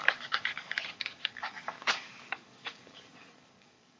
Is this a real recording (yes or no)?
no